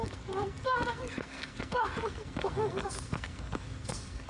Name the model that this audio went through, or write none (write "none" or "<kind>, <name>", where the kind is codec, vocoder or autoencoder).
codec, SNAC